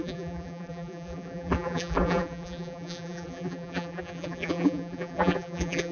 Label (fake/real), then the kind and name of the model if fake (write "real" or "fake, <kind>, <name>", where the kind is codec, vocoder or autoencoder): fake, vocoder, BigVGAN v2